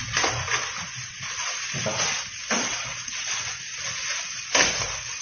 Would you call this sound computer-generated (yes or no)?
no